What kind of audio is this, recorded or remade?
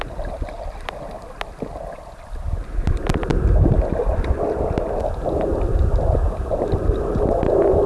recorded